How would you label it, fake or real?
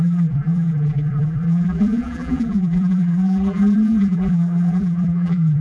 fake